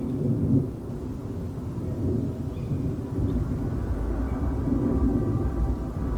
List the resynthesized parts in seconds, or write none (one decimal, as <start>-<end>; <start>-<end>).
none